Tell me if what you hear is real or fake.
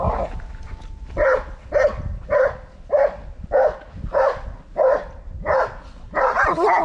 real